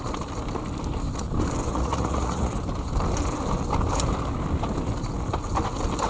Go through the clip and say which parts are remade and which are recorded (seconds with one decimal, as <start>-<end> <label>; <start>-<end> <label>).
0.0-1.7 recorded; 1.7-2.5 remade; 2.5-6.1 recorded